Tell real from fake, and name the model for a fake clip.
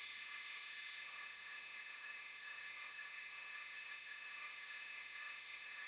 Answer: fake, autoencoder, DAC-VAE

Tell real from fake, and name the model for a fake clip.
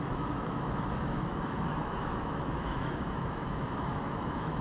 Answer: fake, autoencoder, DAC-VAE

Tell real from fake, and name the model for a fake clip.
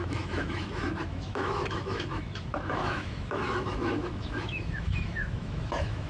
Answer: fake, autoencoder, DAC-VAE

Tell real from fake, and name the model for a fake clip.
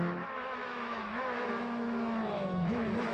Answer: fake, autoencoder, DAC-VAE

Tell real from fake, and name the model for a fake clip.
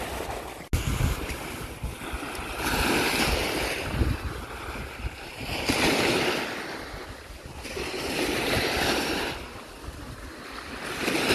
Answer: real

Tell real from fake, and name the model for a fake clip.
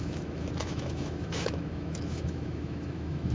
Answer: fake, autoencoder, DAC-VAE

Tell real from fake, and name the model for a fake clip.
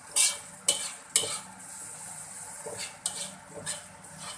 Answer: real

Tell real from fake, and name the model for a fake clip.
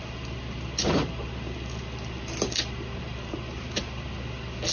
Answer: real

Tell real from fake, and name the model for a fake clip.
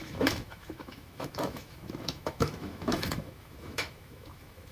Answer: fake, autoencoder, DAC-VAE